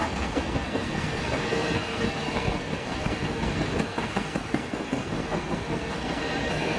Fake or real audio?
fake